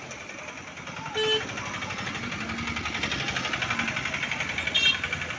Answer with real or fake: real